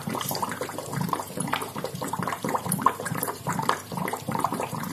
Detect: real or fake fake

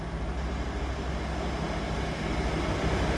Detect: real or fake real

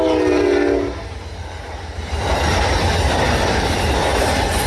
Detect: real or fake real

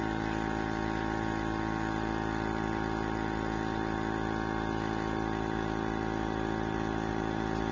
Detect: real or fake real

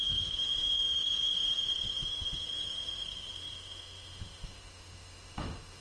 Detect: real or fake fake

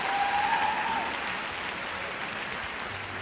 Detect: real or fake real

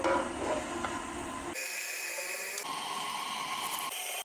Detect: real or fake real